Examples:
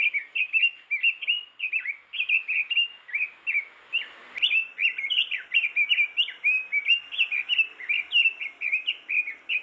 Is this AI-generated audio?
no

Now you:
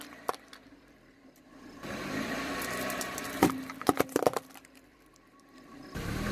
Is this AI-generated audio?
yes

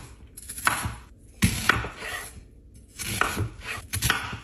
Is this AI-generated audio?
no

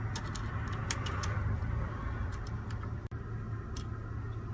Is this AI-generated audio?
no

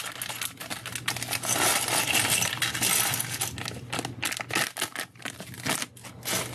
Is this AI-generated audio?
no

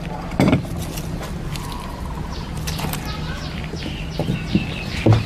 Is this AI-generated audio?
no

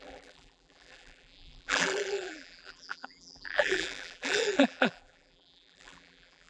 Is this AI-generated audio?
yes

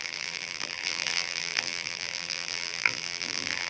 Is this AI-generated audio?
yes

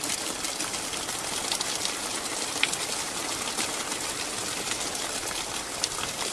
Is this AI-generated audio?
no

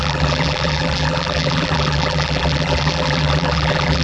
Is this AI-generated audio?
yes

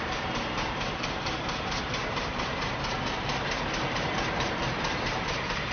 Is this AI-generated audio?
yes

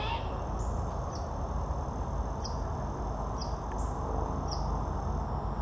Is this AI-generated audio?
no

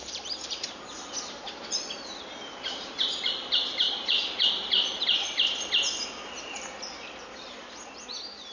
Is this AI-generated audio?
yes